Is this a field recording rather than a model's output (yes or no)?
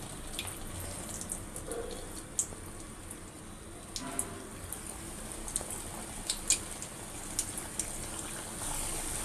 yes